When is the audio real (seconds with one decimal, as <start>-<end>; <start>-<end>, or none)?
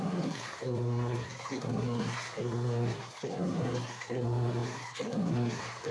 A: none